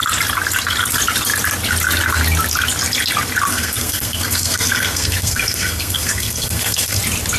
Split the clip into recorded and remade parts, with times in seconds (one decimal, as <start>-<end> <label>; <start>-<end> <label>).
0.0-3.5 recorded; 3.5-7.0 remade; 7.0-7.4 recorded